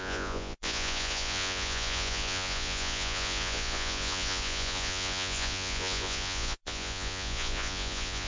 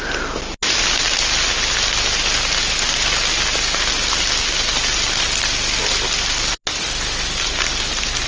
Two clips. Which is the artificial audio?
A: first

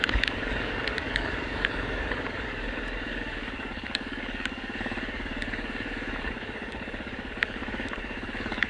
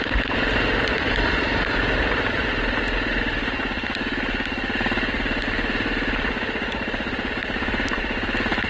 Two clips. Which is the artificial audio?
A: first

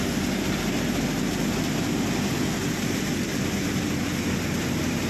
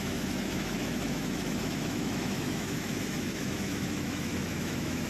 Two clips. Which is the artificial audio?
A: second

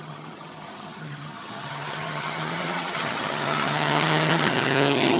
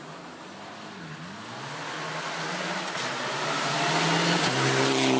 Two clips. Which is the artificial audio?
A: first